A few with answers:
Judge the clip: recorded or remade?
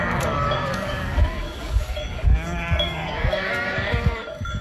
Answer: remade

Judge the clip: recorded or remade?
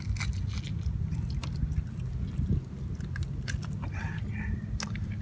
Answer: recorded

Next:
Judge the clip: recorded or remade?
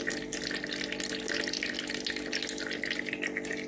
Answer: recorded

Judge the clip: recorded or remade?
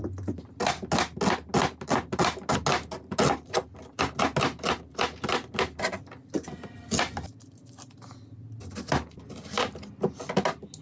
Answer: recorded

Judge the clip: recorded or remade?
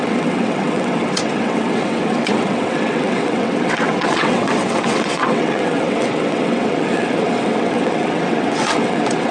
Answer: remade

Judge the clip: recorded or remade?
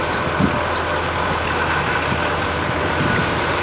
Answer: recorded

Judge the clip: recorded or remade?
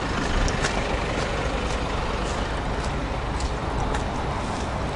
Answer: recorded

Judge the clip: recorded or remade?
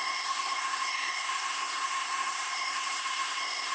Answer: remade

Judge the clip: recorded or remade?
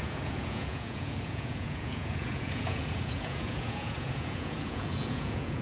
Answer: remade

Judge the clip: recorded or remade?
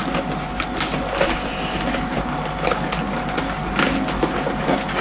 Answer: recorded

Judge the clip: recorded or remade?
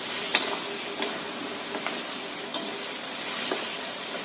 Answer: recorded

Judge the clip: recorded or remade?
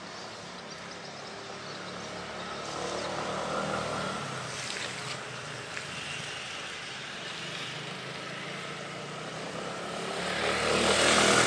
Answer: recorded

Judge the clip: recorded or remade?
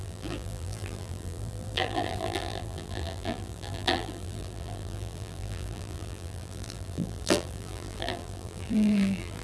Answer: remade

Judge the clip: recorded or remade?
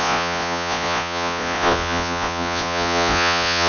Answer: remade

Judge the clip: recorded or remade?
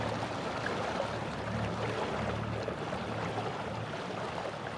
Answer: recorded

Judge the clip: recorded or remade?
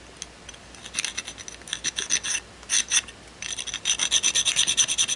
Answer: recorded